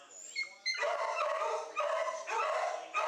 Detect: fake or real real